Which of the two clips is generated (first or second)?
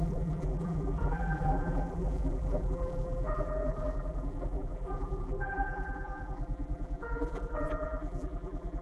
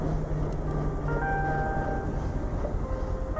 first